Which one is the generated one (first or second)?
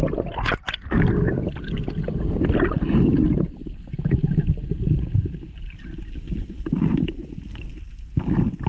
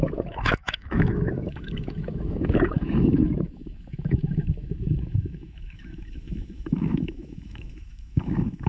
second